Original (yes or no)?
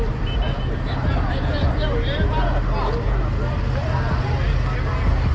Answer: yes